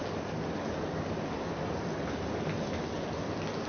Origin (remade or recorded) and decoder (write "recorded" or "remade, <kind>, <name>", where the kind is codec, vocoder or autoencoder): recorded